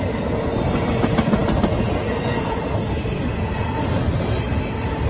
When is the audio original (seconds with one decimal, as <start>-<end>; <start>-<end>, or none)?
0.0-5.1